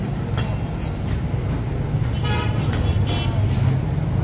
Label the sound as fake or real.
real